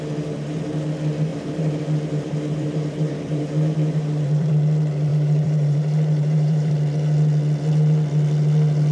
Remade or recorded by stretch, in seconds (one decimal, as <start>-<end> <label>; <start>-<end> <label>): 0.0-1.3 recorded; 1.3-4.5 remade; 4.5-5.1 recorded; 5.1-6.7 remade; 6.7-8.9 recorded